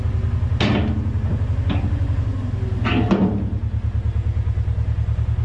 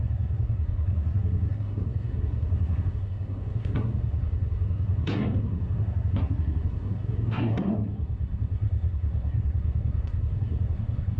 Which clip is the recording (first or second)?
first